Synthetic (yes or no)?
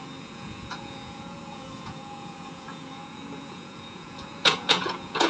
yes